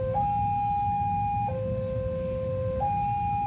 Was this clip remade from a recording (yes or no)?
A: no